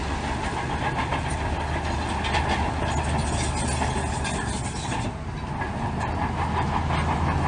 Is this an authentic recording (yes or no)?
yes